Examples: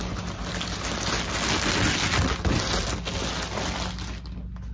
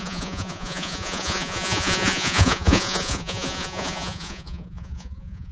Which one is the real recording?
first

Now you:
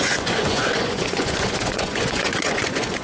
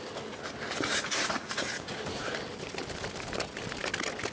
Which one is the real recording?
second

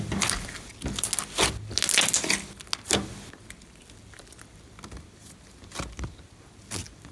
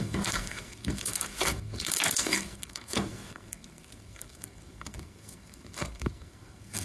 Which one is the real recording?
first